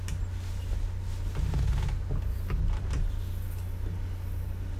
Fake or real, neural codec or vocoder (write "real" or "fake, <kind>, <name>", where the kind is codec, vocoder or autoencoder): real